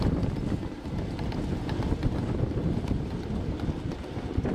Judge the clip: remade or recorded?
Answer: recorded